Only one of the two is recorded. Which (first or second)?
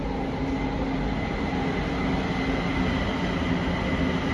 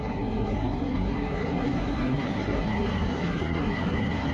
first